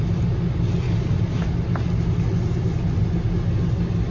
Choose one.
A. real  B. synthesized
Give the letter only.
A